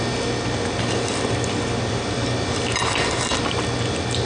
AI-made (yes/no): no